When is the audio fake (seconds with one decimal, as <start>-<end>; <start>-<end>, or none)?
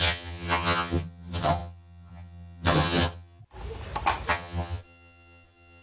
0.0-3.4; 4.3-5.8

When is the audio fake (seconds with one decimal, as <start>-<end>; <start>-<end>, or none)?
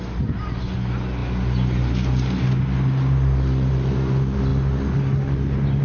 none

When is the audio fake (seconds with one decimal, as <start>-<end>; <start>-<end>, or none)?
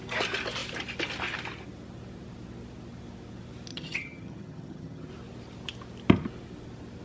3.7-5.1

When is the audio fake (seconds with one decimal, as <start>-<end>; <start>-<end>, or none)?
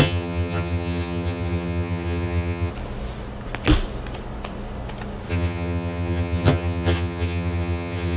0.0-2.7; 5.3-8.2